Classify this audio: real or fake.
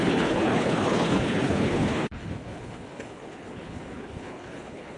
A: fake